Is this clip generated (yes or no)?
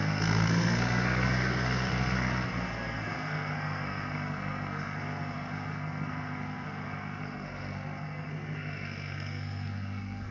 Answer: yes